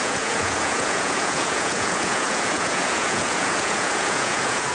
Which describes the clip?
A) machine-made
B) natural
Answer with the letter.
A